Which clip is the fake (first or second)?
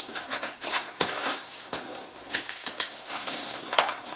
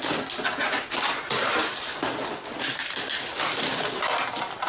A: first